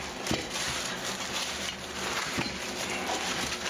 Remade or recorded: recorded